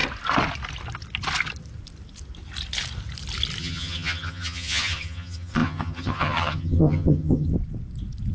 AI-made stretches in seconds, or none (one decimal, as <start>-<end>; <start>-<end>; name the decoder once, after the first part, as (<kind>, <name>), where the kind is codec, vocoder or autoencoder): 3.6-7.5 (vocoder, HiFi-GAN)